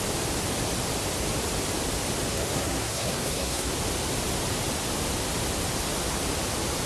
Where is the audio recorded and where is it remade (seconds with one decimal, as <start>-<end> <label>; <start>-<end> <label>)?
0.0-2.3 recorded; 2.3-3.7 remade; 3.7-6.9 recorded